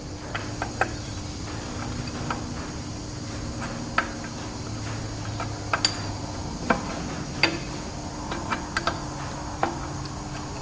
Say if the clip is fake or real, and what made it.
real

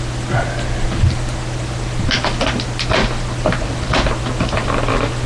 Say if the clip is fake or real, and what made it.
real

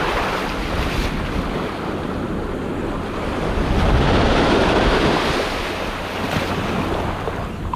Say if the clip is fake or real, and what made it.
real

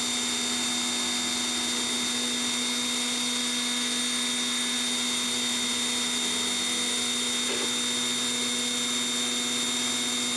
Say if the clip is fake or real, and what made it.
real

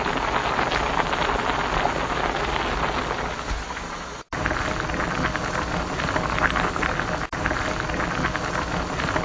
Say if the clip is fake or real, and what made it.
real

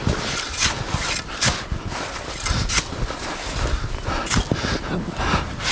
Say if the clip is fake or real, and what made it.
real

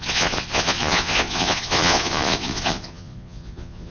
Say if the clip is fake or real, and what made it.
fake, vocoder, Vocos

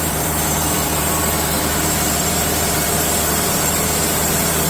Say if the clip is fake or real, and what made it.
fake, vocoder, BigVGAN v2